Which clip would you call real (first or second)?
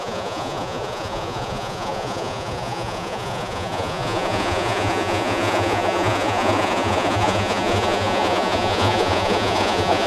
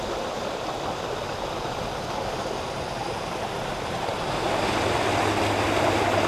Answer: second